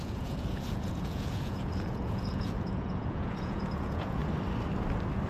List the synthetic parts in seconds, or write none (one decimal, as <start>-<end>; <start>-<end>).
0.0-4.2